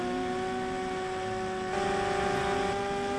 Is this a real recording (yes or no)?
yes